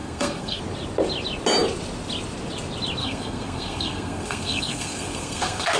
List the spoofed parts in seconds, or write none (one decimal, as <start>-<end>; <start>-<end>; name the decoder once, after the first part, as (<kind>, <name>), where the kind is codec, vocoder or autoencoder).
0.0-0.6 (codec, SNAC); 3.0-5.8